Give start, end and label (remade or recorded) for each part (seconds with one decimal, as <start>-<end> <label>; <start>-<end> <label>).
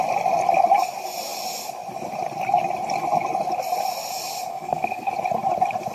0.0-4.5 recorded; 4.5-5.1 remade; 5.1-5.9 recorded